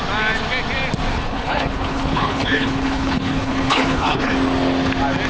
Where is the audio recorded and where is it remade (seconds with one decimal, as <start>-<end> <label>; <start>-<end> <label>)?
0.0-1.1 recorded; 1.1-4.3 remade; 4.3-5.3 recorded